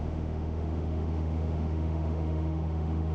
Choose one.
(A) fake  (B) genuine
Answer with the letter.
A